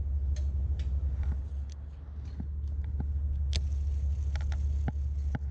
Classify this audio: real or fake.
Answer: real